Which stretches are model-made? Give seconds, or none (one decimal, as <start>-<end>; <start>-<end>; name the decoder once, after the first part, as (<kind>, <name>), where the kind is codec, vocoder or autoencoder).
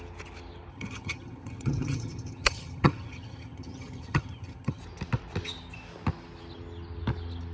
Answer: 0.7-4.8 (vocoder, HiFi-GAN)